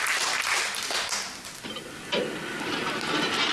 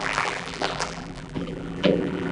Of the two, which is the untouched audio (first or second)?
first